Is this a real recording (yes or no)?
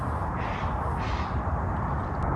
yes